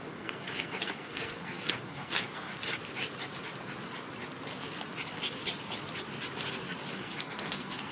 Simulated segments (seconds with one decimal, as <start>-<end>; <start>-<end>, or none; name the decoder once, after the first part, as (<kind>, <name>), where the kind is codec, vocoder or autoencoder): 0.0-2.5 (codec, SNAC); 6.9-7.9